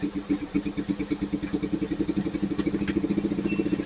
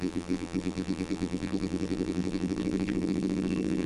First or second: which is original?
first